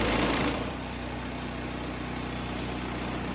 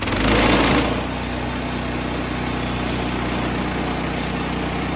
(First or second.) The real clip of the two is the second